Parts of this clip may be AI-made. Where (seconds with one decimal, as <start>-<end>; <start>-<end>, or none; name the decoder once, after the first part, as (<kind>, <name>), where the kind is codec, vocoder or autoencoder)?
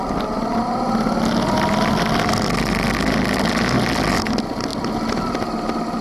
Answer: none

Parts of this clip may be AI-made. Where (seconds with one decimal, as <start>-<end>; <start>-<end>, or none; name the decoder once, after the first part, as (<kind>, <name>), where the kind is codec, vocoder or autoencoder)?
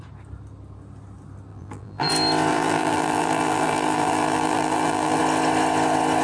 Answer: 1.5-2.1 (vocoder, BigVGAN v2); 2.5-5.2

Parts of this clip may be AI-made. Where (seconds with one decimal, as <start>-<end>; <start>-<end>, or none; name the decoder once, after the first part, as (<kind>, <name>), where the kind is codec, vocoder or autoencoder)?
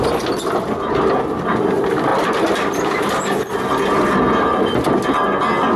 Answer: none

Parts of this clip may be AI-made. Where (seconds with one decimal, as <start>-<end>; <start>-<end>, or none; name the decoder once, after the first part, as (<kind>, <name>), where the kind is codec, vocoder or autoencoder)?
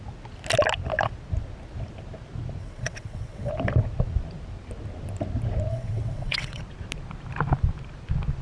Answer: 2.6-3.5 (vocoder, WaveNeXt); 5.7-6.6